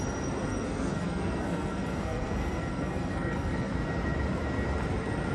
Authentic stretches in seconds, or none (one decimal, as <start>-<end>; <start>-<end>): 0.0-0.5; 3.7-5.3